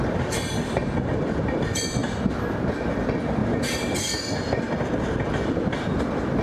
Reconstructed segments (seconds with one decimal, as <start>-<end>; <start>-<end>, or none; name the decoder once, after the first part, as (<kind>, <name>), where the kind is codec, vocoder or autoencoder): 0.0-2.0 (vocoder, BigVGAN v2); 2.7-6.4